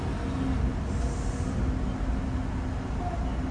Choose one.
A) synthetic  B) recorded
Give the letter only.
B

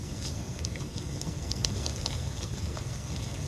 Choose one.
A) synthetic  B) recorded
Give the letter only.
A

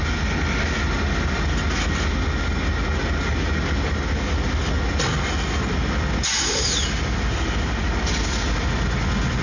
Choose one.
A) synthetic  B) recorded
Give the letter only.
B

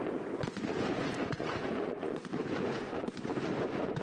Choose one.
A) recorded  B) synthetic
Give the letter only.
B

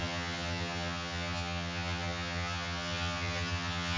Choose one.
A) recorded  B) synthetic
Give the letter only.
B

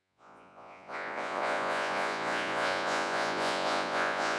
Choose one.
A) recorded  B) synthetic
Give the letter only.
B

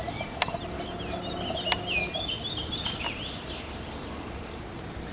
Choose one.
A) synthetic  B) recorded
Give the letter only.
B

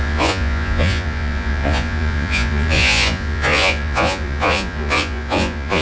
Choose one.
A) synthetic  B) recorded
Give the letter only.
A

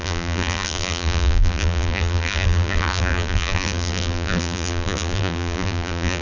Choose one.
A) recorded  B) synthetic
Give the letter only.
B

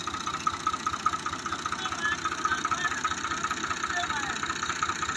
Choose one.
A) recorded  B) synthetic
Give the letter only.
A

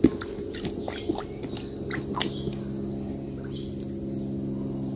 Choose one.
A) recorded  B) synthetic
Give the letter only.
A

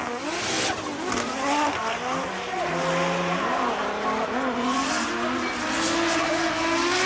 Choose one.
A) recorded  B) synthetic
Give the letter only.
A